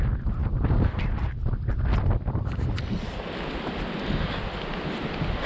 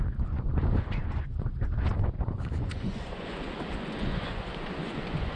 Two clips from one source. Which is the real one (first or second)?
first